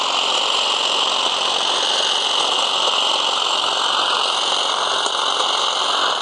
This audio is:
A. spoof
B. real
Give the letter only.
B